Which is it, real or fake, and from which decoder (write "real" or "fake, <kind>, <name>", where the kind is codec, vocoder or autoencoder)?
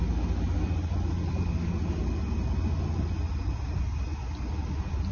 real